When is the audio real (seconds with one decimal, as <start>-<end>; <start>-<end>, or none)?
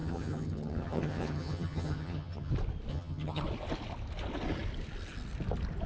2.5-2.9; 3.4-5.9